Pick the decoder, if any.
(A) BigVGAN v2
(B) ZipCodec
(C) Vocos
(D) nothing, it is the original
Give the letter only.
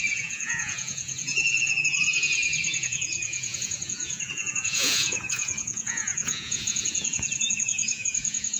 C